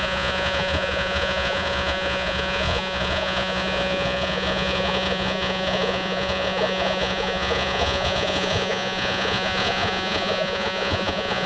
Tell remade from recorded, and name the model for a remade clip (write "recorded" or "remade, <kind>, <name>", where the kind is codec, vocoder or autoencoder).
remade, vocoder, Vocos